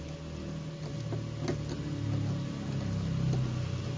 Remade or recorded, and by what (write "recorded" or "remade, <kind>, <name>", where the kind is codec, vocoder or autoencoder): recorded